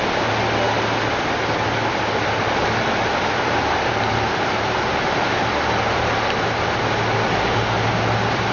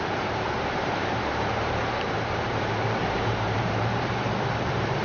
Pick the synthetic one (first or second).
second